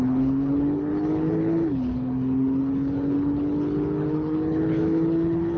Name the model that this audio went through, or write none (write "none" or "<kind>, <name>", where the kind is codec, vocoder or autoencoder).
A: codec, HILCodec